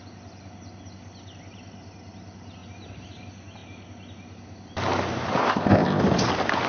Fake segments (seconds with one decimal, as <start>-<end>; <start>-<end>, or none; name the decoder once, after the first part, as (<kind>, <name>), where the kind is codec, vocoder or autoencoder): 5.4-6.0 (codec, ZipCodec)